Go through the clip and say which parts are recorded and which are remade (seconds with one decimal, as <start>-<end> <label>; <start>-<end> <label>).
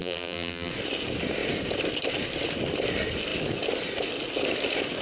0.0-0.7 remade; 0.7-5.0 recorded